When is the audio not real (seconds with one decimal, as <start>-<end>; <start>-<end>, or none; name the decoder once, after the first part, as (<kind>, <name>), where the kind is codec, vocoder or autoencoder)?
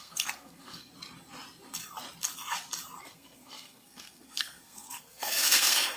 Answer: 0.0-0.9 (codec, SNAC); 3.0-6.0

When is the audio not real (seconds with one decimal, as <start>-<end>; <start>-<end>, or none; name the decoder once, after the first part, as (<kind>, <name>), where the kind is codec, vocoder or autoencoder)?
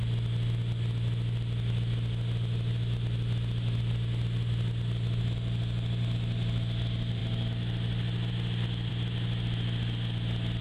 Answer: none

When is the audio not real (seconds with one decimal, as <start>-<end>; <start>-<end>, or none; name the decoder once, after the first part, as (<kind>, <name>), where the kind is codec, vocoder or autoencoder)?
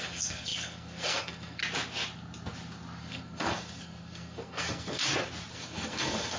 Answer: 0.0-1.6 (codec, SNAC); 3.0-5.0; 5.5-6.4